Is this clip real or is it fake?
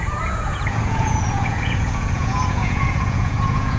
fake